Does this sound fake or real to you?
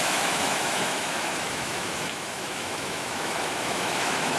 fake